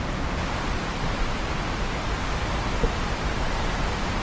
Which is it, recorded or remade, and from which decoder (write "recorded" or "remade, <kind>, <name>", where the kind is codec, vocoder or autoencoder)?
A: recorded